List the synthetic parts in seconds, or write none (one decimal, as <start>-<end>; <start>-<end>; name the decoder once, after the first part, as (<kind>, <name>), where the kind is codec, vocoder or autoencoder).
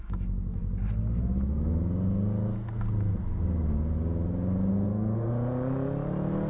4.7-5.3 (codec, SNAC)